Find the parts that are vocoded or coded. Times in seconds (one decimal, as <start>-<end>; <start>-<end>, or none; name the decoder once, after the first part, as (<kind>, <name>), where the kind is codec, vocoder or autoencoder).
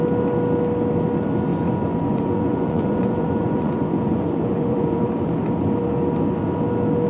1.5-5.1 (vocoder, Vocos)